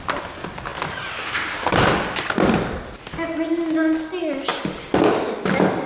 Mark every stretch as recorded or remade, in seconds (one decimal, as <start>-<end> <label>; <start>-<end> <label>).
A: 0.0-5.9 recorded